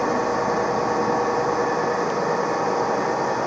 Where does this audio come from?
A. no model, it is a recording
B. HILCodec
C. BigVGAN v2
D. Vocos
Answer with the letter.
A